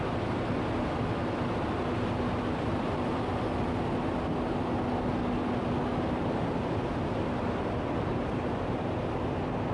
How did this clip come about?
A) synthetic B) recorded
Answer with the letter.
B